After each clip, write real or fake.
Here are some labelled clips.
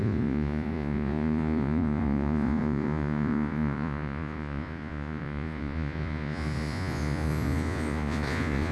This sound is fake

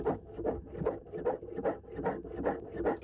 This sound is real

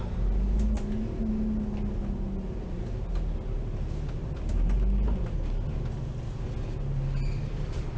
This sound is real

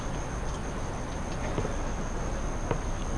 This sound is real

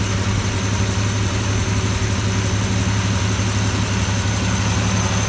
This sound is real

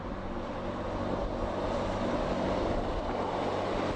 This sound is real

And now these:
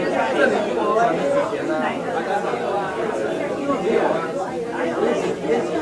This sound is real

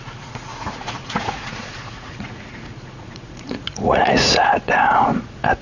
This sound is fake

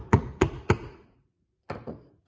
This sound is fake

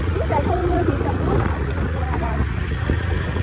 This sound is fake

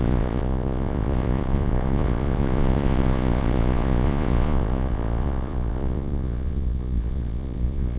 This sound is fake